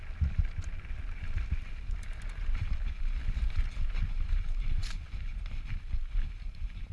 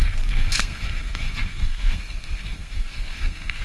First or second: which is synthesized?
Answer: second